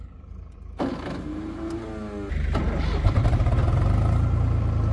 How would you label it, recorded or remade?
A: recorded